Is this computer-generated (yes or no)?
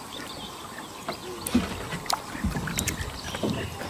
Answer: no